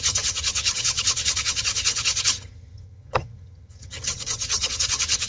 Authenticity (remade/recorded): remade